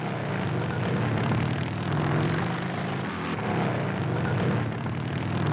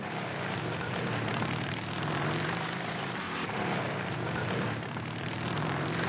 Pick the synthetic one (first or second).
second